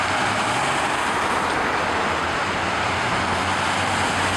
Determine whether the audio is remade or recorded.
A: recorded